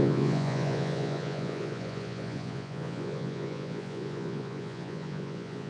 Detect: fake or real fake